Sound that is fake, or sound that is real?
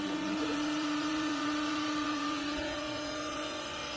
fake